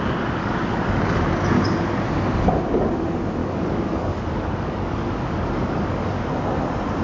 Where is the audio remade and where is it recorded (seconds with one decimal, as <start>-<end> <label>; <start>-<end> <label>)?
0.0-0.4 recorded; 0.4-1.0 remade; 1.0-3.4 recorded; 3.4-6.3 remade; 6.3-7.0 recorded